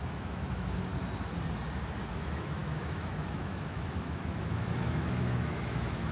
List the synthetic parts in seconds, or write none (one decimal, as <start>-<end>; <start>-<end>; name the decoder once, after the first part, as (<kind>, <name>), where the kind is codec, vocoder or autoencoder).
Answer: 0.0-0.9 (autoencoder, DAC-VAE); 2.1-6.1